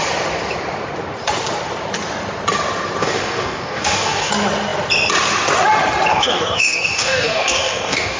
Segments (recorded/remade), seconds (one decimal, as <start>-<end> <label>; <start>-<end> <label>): 0.0-3.0 recorded; 3.0-4.3 remade; 4.3-6.1 recorded; 6.1-8.2 remade